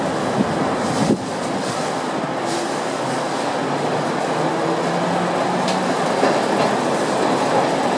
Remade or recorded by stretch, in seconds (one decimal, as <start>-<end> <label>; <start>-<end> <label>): 0.0-8.0 recorded